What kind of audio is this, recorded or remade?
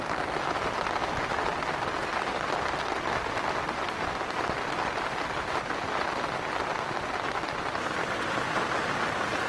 recorded